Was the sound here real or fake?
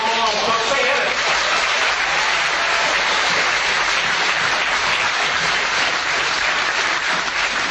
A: fake